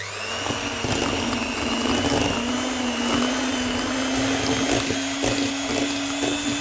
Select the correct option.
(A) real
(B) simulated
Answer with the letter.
A